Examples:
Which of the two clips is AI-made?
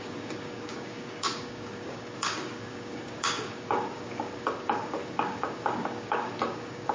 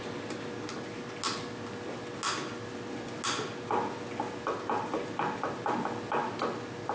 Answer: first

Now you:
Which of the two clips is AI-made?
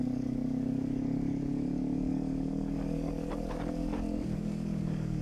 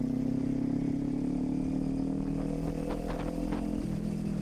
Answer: first